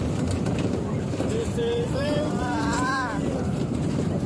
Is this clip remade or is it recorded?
remade